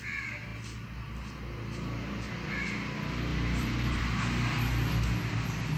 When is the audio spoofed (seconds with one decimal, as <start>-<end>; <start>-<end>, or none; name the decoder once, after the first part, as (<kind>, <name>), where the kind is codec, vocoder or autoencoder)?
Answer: 3.3-4.0 (vocoder, BigVGAN v2)